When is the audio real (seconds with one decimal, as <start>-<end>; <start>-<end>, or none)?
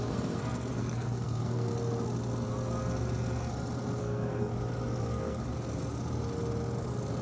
1.7-4.0; 4.5-5.0; 5.5-7.2